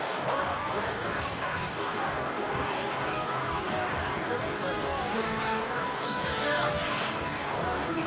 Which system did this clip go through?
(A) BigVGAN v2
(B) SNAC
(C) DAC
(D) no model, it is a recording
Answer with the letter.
C